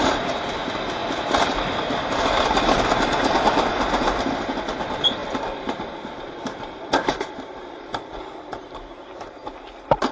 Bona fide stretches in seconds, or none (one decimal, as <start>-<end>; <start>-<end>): 0.0-5.2; 8.3-10.1